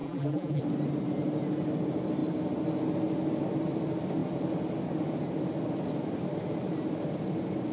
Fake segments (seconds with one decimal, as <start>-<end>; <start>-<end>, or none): 0.0-0.6